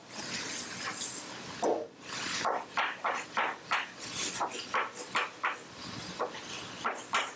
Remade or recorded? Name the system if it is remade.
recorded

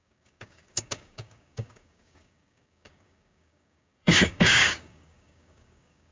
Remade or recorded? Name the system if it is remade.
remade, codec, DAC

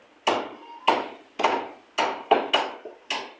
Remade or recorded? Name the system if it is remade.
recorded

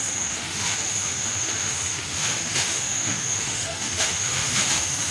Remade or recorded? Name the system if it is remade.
remade, autoencoder, DAC-VAE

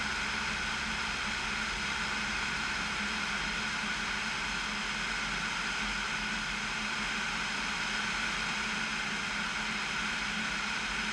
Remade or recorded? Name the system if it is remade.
recorded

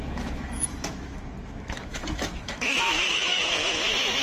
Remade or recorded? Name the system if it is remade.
remade, autoencoder, DAC-VAE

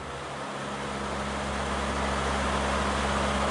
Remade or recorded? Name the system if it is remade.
recorded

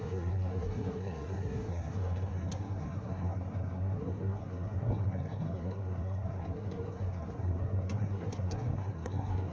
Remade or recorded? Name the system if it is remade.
remade, codec, SNAC